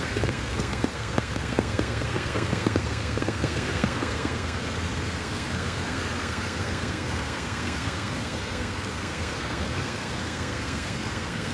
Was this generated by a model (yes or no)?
yes